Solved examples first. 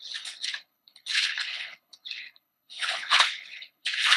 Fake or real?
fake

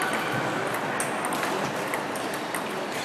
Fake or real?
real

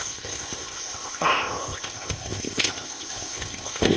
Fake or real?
fake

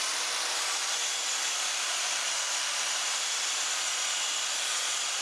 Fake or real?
real